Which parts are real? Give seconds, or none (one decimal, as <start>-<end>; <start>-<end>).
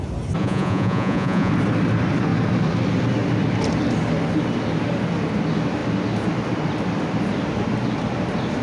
0.0-0.4; 1.5-8.6